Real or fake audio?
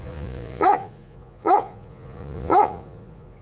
fake